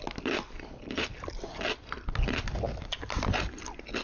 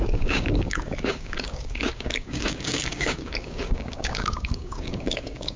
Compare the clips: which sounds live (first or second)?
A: first